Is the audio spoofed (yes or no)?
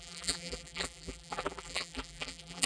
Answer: yes